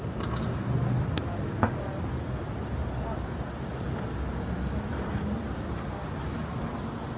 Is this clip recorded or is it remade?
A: recorded